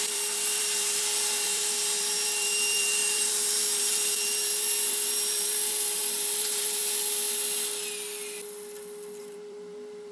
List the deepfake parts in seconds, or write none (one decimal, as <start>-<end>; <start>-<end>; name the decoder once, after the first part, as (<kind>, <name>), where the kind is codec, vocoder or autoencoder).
0.0-6.8 (vocoder, BigVGAN v2); 9.2-10.1